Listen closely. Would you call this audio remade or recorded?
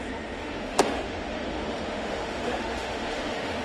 remade